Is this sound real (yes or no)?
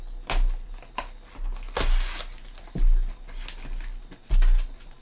yes